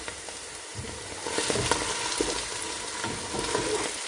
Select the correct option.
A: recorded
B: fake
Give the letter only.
A